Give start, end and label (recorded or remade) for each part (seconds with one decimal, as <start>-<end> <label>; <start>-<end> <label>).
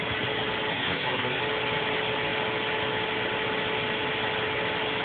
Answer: 0.0-0.7 recorded; 0.7-1.4 remade; 1.4-5.0 recorded